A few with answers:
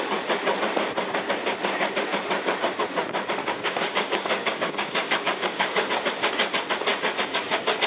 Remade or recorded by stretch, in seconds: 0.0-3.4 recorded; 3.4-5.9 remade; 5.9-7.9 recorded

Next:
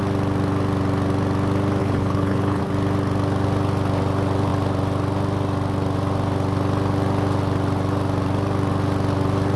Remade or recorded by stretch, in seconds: 0.0-1.8 recorded; 1.8-2.6 remade; 2.6-9.6 recorded

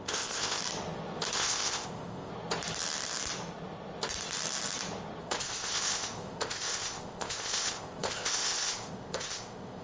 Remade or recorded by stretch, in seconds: 0.0-0.6 remade; 0.6-1.3 recorded; 1.3-2.3 remade; 2.3-5.2 recorded; 5.2-9.8 remade

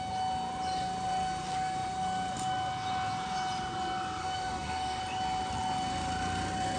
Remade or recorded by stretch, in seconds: 0.0-4.2 recorded; 4.2-5.0 remade; 5.0-6.8 recorded